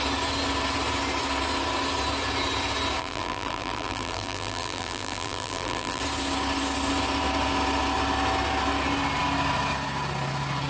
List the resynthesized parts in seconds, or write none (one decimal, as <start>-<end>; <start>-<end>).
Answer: 3.0-6.0